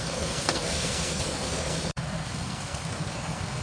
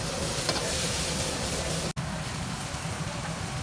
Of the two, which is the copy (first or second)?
first